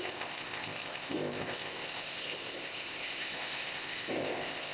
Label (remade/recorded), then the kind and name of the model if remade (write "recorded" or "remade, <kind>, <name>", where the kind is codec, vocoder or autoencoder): remade, codec, ZipCodec